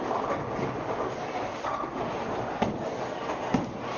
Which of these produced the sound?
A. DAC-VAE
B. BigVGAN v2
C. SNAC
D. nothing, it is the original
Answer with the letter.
D